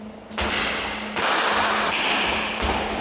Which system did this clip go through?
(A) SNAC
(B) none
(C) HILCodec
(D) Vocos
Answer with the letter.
B